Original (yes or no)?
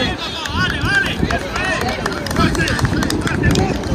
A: no